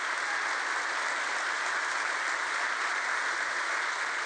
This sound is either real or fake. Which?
real